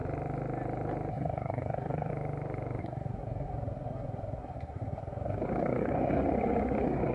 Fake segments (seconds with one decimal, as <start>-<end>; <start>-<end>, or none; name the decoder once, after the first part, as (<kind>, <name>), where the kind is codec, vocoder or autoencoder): 1.1-2.1 (codec, SNAC); 2.8-7.1